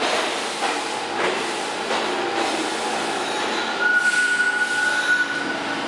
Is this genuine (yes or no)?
yes